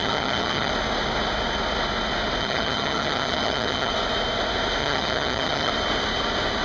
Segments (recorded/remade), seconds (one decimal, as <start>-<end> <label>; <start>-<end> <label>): 0.0-0.7 remade; 0.7-2.4 recorded; 2.4-3.9 remade; 3.9-4.8 recorded; 4.8-5.7 remade; 5.7-6.6 recorded